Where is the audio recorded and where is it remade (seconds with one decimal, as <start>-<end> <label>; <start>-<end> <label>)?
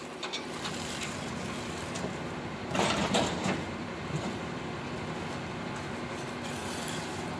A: 0.0-3.0 recorded; 3.0-4.6 remade; 4.6-6.6 recorded; 6.6-7.4 remade